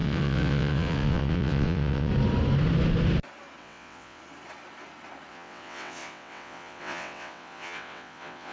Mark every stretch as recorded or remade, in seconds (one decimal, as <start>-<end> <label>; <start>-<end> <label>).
0.0-2.1 remade; 2.1-3.6 recorded; 3.6-4.2 remade; 4.2-5.3 recorded; 5.3-8.5 remade